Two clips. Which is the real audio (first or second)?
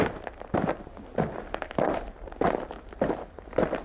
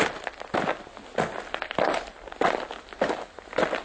second